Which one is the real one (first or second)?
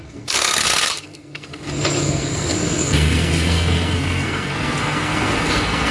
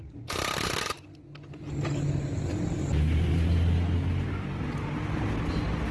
second